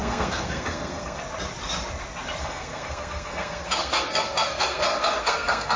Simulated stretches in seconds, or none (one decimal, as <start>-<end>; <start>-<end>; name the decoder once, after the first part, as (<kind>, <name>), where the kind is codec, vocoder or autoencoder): 0.0-1.2 (codec, SNAC); 2.4-5.8